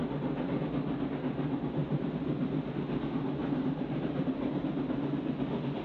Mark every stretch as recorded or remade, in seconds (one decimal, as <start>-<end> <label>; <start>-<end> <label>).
0.0-1.8 recorded; 1.8-2.7 remade; 2.7-3.4 recorded; 3.4-4.8 remade; 4.8-5.8 recorded